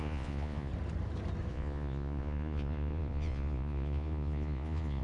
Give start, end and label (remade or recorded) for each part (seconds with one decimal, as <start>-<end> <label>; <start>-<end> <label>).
0.0-0.7 remade; 0.7-1.5 recorded; 1.5-5.0 remade